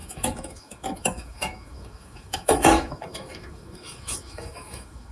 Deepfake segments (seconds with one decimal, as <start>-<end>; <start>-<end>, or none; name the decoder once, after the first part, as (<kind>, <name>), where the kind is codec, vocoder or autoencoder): 0.0-5.1 (autoencoder, DAC-VAE)